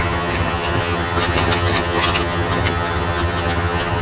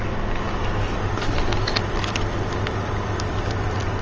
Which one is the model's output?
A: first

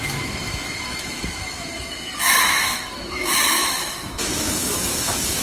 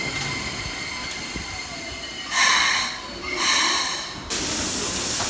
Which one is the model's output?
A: first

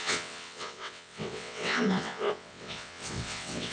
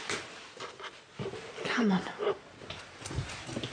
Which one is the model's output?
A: first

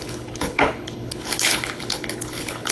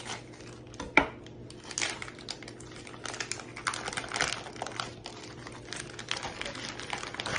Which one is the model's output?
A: first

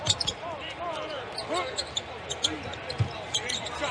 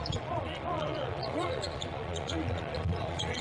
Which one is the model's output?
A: second